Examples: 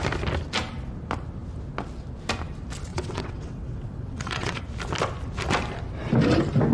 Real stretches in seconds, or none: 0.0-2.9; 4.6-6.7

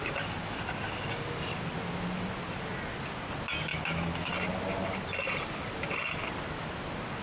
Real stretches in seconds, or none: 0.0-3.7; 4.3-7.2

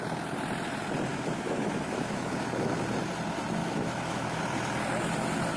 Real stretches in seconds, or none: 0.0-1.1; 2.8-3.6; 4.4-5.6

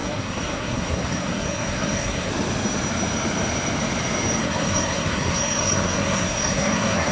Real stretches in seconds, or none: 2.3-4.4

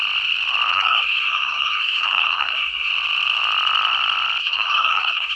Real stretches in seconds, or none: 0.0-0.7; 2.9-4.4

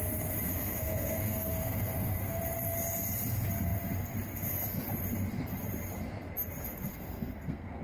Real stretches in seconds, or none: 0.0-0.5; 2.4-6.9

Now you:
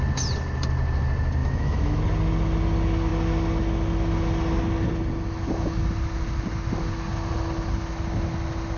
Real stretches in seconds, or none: 0.0-1.4; 2.0-8.8

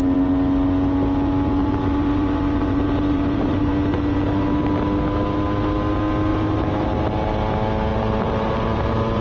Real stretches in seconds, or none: 0.0-1.6; 3.7-6.3; 6.9-7.9